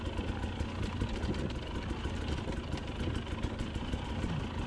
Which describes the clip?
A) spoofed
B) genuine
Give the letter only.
B